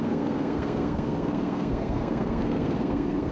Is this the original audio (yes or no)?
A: no